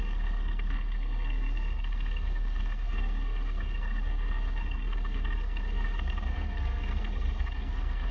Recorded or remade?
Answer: remade